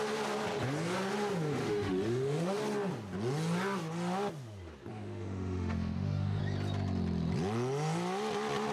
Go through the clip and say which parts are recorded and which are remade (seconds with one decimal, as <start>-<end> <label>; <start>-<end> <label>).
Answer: 0.0-1.6 recorded; 1.6-2.6 remade; 2.6-4.9 recorded; 4.9-6.4 remade; 6.4-8.7 recorded